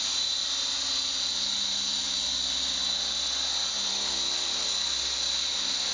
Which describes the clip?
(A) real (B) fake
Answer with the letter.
A